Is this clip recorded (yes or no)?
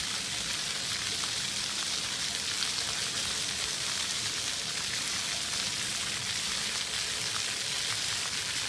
yes